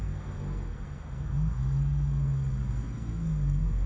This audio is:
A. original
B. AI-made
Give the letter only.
B